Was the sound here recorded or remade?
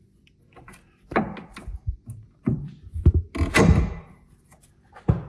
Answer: recorded